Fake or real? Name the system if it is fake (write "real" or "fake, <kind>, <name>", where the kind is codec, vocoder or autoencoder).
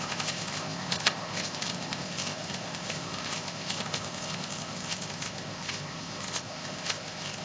fake, codec, ZipCodec